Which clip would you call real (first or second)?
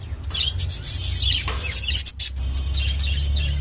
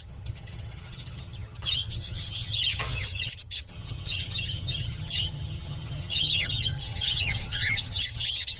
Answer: first